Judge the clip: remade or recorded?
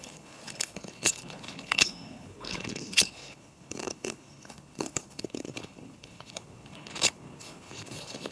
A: remade